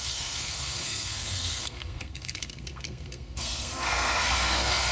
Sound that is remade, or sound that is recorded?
remade